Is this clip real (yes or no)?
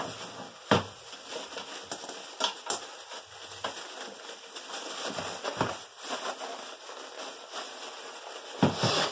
yes